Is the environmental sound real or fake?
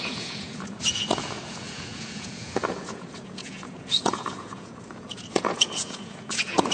fake